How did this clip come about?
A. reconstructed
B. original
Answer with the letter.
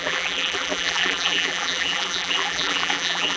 A